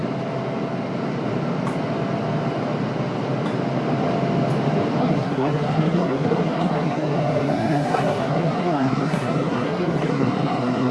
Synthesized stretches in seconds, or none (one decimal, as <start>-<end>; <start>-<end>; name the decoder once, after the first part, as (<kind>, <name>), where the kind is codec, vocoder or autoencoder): 5.0-10.9 (codec, SNAC)